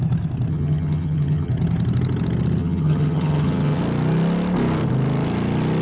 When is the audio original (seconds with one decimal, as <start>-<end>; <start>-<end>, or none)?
0.0-0.5; 1.5-2.6; 3.8-5.8

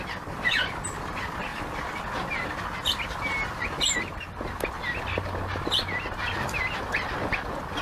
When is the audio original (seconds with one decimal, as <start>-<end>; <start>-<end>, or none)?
0.0-7.8

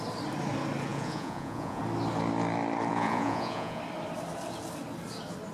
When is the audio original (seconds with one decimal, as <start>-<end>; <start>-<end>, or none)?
0.0-0.9; 1.8-2.9; 3.8-5.5

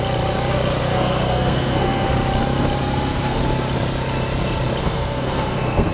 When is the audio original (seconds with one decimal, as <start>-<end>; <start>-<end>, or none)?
0.0-0.8; 2.1-2.8; 3.4-4.8

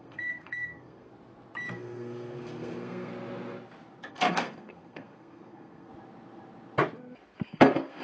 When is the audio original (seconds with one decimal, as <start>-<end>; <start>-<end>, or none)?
1.1-1.7; 3.1-4.1; 5.9-7.5

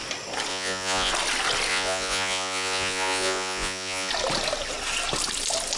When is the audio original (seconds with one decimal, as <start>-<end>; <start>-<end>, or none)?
0.0-0.5; 1.1-1.7; 4.1-5.8

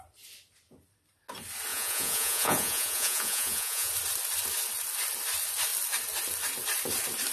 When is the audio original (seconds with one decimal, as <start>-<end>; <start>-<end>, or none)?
0.0-1.7; 3.9-7.3